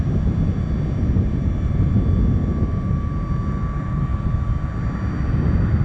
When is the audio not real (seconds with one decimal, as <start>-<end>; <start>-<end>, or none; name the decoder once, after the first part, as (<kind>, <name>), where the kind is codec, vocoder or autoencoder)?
none